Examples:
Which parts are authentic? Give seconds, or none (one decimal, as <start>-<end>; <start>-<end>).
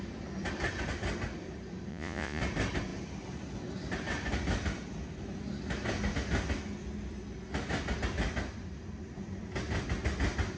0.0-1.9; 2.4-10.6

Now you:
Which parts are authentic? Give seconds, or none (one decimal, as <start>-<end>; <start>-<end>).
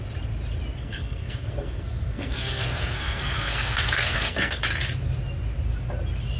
0.0-0.8; 4.6-6.4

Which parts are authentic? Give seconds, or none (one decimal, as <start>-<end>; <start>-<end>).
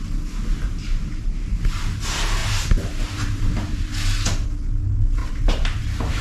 0.0-0.6; 1.3-2.4; 3.8-5.2; 5.8-6.2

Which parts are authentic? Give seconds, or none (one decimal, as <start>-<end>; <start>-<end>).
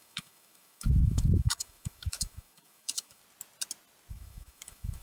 3.2-4.1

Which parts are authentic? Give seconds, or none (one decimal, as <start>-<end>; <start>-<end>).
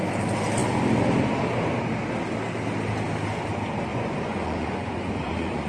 0.0-3.9